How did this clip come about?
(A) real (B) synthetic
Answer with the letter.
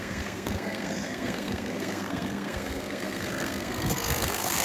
B